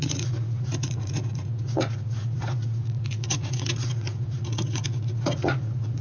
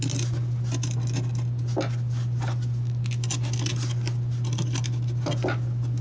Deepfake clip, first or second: first